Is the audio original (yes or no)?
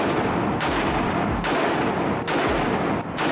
yes